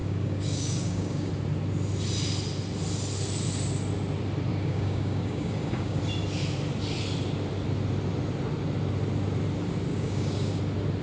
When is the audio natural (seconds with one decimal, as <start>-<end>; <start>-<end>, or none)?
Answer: 1.3-4.5; 6.0-9.9; 10.6-11.0